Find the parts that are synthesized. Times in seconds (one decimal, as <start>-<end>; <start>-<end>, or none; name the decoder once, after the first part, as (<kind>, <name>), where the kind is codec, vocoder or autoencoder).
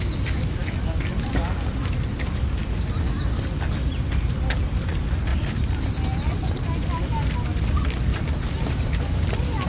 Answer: 5.3-5.9 (vocoder, BigVGAN v2); 8.1-9.7